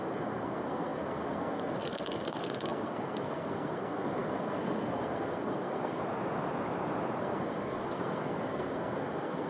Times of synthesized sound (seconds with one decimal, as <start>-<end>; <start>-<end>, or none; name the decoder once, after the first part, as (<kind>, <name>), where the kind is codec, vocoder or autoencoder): 0.0-6.0 (codec, SNAC); 7.2-9.5